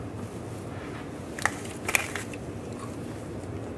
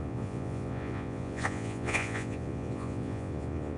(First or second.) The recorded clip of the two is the first